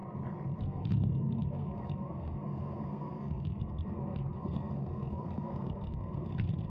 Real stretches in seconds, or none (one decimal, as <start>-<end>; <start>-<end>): 0.0-0.6